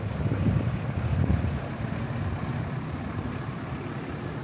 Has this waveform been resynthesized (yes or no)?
no